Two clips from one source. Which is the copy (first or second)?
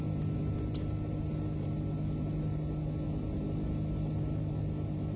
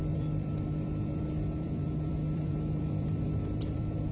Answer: second